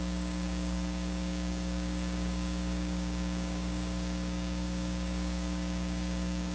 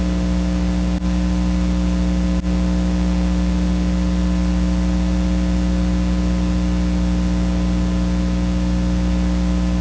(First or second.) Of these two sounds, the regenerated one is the first